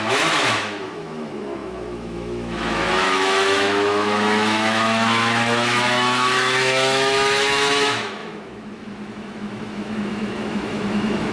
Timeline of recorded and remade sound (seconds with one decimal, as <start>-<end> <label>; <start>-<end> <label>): 0.0-11.3 remade